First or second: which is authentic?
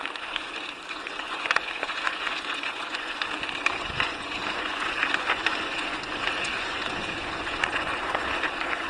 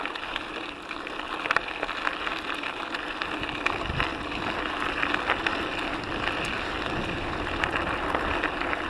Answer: second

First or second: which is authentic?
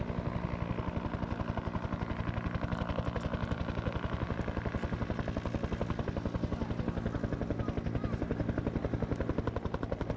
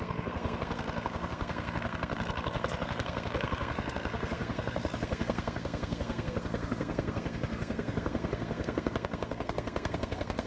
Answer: first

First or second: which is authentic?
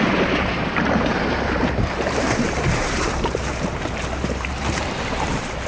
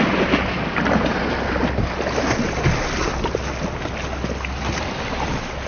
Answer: second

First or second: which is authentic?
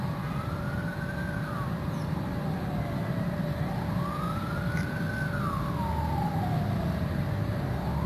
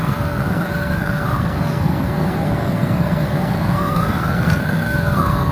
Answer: first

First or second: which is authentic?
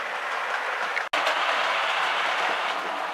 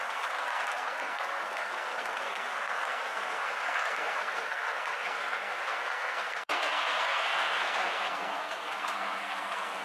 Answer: first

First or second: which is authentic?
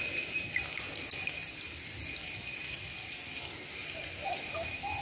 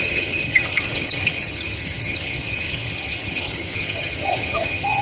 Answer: first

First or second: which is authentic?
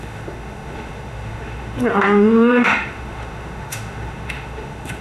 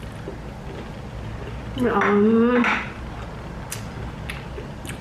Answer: second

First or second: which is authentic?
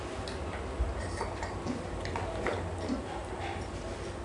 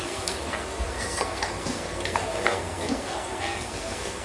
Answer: first